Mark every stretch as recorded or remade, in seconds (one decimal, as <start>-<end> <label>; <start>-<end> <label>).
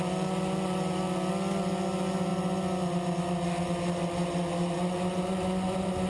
0.0-6.1 recorded